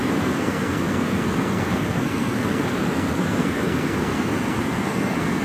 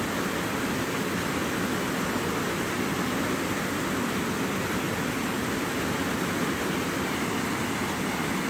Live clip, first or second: second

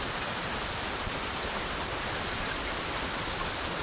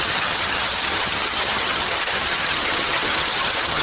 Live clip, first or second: first